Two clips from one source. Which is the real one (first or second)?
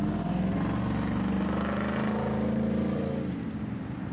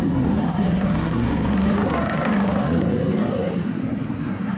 first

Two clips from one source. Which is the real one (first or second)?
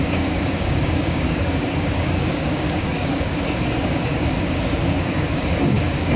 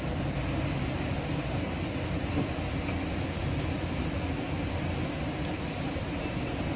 second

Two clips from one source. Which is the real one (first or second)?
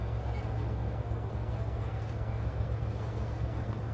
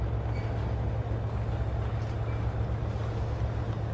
second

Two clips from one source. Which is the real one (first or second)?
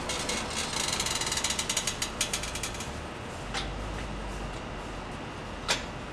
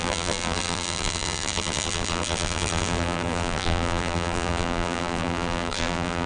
first